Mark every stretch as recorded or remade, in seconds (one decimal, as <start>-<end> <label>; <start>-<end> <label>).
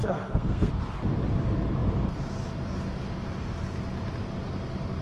0.0-0.7 remade; 0.7-5.0 recorded